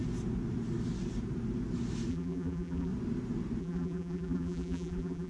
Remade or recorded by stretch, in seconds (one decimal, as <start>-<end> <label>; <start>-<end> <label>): 0.0-2.1 recorded; 2.1-2.9 remade; 2.9-3.6 recorded; 3.6-5.3 remade